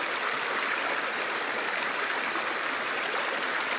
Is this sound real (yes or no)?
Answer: yes